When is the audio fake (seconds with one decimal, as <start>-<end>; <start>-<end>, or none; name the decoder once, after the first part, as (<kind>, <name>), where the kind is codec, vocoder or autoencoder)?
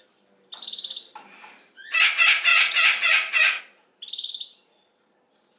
2.5-3.6 (vocoder, Vocos)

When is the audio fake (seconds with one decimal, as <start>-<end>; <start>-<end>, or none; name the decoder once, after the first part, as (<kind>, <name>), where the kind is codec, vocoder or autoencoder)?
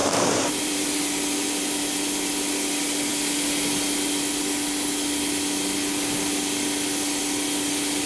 0.0-1.0 (vocoder, BigVGAN v2)